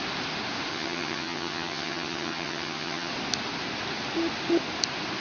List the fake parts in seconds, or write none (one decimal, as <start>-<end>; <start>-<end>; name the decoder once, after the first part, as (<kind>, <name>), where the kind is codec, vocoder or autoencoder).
0.7-3.1 (vocoder, HiFi-GAN)